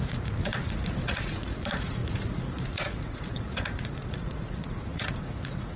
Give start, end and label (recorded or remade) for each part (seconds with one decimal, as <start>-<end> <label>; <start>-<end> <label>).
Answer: 0.0-5.8 remade